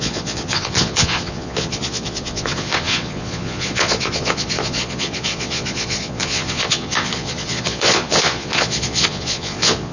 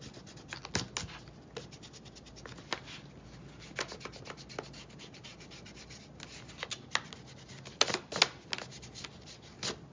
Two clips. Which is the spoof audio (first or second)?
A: first